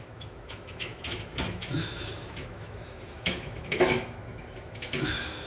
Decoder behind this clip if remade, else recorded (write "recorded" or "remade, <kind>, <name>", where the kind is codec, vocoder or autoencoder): remade, autoencoder, DAC-VAE